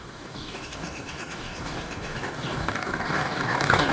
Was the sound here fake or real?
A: fake